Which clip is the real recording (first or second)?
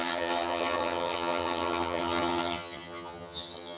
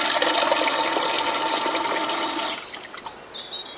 second